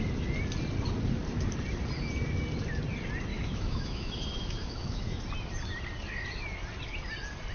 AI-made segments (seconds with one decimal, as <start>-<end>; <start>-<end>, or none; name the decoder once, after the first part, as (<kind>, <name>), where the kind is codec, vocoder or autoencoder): 3.3-5.2 (autoencoder, DAC-VAE)